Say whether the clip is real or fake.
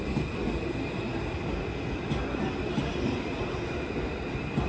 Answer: real